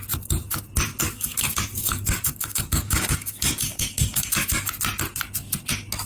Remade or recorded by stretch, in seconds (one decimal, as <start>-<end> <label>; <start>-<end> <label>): 0.0-1.0 recorded; 1.0-4.7 remade; 4.7-6.1 recorded